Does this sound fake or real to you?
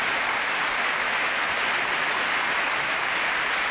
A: real